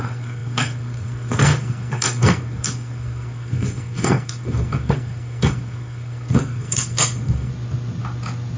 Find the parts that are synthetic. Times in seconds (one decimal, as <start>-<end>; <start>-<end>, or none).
0.0-7.5